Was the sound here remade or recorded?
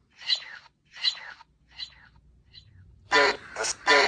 recorded